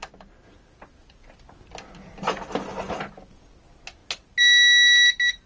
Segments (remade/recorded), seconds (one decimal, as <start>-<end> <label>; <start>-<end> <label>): 0.0-5.5 recorded